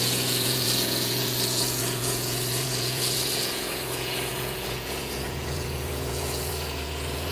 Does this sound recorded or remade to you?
remade